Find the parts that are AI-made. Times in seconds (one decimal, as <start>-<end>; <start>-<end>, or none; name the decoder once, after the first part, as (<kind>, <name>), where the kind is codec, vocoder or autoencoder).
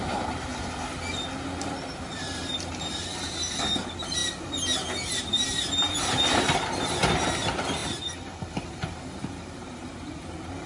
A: 0.0-0.5 (vocoder, BigVGAN v2); 1.7-4.2; 5.2-10.7